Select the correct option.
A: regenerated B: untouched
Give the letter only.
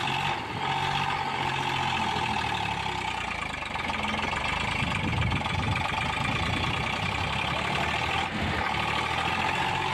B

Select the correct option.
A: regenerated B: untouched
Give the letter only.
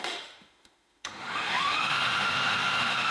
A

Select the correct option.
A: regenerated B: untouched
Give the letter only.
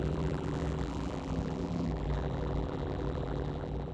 A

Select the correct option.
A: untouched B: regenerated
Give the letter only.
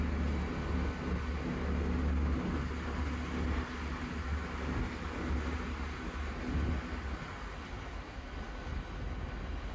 A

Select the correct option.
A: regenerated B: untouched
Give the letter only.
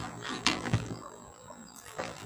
A